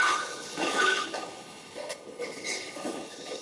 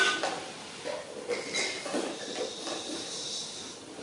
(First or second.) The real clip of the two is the second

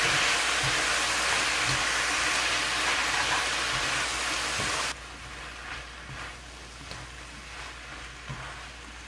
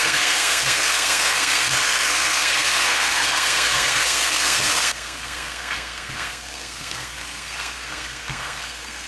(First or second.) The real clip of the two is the first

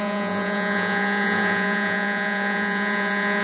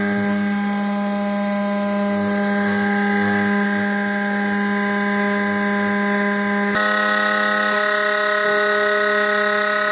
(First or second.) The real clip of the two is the second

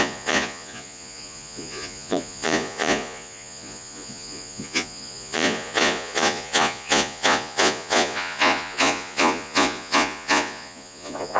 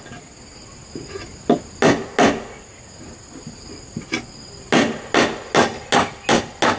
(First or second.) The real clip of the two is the second